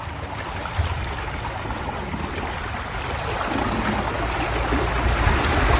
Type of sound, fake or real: real